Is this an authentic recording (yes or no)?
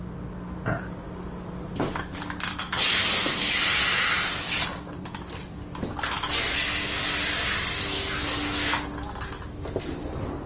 yes